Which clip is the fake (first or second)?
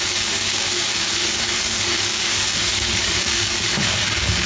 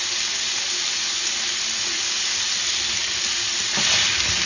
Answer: first